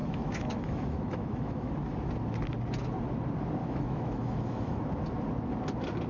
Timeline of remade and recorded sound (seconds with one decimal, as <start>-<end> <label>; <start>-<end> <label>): 0.0-1.7 remade; 1.7-3.6 recorded; 3.6-4.8 remade; 4.8-6.1 recorded